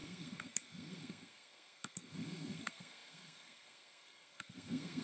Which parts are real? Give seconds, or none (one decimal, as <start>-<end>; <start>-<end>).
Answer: none